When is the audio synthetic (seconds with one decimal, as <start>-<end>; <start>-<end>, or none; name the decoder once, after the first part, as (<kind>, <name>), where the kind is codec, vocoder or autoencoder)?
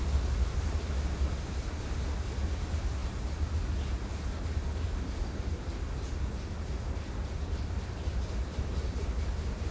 none